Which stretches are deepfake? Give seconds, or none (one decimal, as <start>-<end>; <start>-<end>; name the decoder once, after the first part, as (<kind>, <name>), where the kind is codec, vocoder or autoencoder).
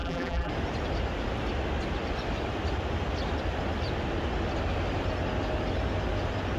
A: 0.0-0.5 (vocoder, BigVGAN v2)